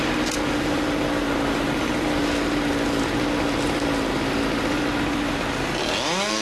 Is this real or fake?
real